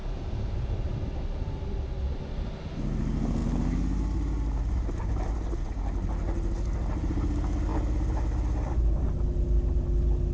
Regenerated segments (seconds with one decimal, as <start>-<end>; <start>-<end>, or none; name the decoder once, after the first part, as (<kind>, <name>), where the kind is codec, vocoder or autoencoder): none